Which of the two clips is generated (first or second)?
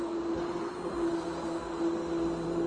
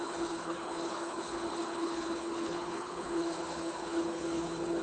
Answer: second